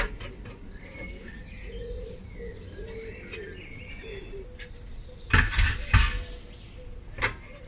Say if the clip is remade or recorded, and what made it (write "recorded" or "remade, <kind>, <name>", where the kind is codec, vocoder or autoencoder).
recorded